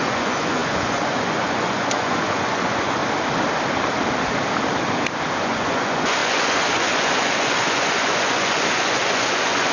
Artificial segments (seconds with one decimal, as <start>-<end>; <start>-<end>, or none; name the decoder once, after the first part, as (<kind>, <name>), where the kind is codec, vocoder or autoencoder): 0.0-3.0 (vocoder, Vocos); 5.4-9.7